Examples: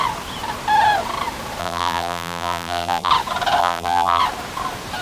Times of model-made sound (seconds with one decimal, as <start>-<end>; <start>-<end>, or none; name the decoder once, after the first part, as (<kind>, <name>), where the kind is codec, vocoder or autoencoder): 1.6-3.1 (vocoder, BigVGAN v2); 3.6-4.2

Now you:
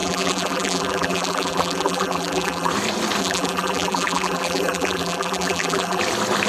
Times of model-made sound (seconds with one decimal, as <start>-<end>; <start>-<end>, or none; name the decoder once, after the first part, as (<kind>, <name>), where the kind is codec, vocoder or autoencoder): 0.0-2.7 (vocoder, BigVGAN v2); 3.2-6.0

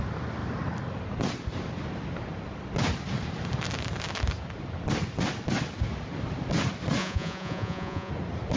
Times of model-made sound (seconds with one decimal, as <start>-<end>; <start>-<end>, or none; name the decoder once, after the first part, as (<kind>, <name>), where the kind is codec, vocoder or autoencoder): 7.0-8.1 (vocoder, Vocos)